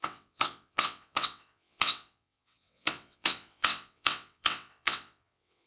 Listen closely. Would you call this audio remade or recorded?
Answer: remade